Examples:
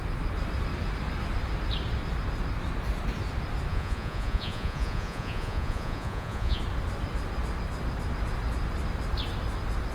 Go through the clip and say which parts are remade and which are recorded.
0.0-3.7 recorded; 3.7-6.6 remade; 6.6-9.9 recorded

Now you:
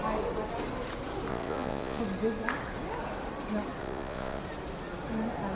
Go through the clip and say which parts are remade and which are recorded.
0.0-1.3 recorded; 1.3-2.0 remade; 2.0-3.8 recorded; 3.8-4.4 remade; 4.4-5.5 recorded

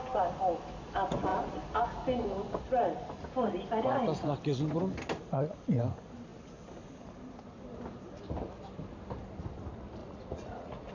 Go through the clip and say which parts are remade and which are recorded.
0.0-10.0 recorded; 10.0-10.9 remade